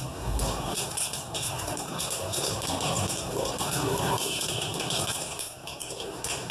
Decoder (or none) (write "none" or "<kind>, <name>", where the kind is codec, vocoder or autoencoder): codec, SNAC